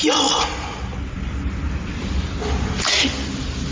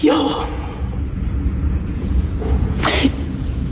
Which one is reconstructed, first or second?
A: second